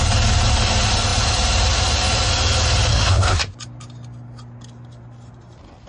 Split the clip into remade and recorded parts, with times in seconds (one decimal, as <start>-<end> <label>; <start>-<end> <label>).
0.0-2.9 recorded; 2.9-3.4 remade; 3.4-5.9 recorded